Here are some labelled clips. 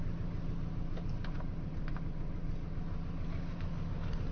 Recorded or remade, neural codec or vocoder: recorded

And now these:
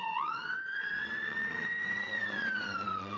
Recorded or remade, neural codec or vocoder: remade, vocoder, WaveNeXt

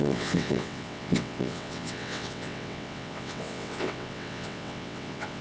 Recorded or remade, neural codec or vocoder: remade, vocoder, WaveNeXt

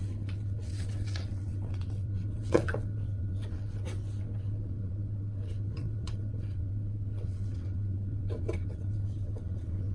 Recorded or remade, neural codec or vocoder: remade, vocoder, WaveNeXt